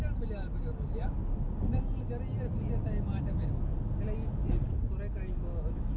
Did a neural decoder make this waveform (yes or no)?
no